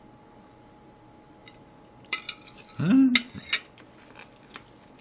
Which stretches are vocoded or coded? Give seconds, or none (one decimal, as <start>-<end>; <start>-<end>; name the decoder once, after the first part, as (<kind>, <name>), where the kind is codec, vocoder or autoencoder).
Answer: 1.4-2.2 (vocoder, BigVGAN v2)